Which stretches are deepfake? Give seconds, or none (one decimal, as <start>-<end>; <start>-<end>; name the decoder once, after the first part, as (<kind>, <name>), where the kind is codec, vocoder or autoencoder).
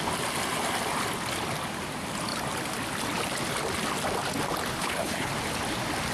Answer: 4.7-5.3 (codec, HILCodec)